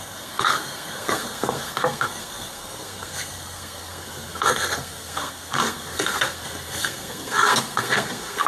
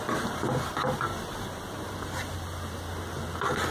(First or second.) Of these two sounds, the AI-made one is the first